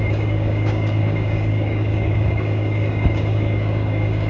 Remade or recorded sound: remade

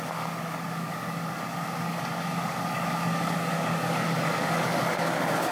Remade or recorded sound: remade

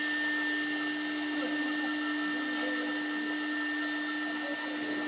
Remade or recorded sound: recorded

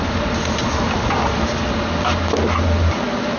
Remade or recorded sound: recorded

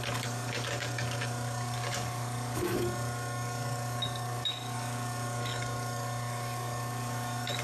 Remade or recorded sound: remade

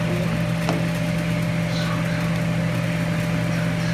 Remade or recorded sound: recorded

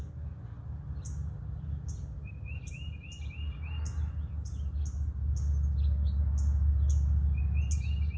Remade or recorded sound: recorded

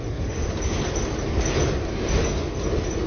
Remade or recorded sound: recorded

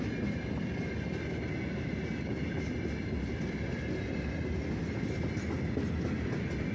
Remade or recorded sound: recorded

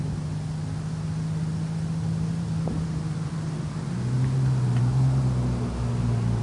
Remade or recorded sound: recorded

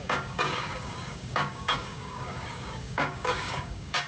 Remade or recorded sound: remade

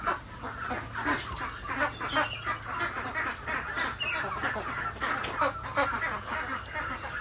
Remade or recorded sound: recorded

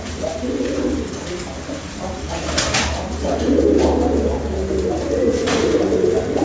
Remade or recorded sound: recorded